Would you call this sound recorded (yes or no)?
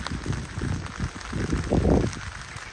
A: yes